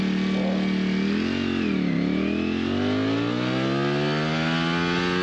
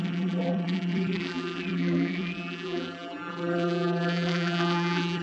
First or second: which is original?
first